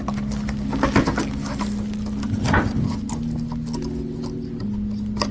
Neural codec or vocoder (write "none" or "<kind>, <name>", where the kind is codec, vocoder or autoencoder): none